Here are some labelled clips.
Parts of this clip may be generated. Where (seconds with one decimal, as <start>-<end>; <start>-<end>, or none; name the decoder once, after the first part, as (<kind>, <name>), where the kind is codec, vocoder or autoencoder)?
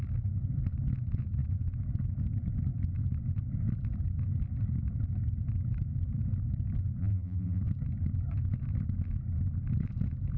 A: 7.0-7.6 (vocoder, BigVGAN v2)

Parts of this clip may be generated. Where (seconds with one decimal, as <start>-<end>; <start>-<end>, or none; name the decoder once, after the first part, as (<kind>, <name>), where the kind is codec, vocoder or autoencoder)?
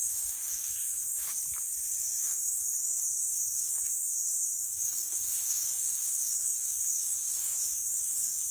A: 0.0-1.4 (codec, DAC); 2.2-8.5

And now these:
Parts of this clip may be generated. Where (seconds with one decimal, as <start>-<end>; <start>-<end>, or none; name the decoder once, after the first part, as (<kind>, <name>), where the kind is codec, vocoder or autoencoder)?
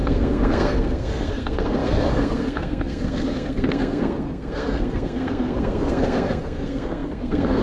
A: 0.0-7.6 (codec, SNAC)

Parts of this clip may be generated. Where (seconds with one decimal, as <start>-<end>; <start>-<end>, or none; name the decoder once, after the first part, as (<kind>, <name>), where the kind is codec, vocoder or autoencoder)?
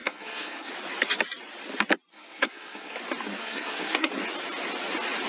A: 0.0-0.7 (codec, SNAC); 2.1-3.0; 3.4-4.1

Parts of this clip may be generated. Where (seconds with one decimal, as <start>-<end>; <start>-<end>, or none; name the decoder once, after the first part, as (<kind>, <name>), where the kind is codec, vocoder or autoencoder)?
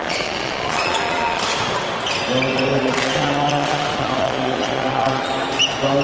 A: 0.0-1.4 (vocoder, Vocos); 2.8-5.3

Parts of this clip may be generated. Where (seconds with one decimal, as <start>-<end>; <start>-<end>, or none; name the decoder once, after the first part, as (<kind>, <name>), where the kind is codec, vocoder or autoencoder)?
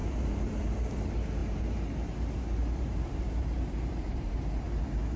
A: 0.0-0.6 (vocoder, BigVGAN v2); 1.4-4.5